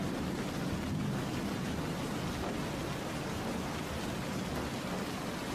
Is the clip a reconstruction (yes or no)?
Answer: no